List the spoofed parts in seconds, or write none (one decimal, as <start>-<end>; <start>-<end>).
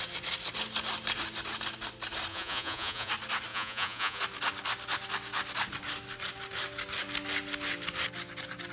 2.3-3.1; 3.5-4.2